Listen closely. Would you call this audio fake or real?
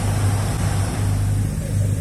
real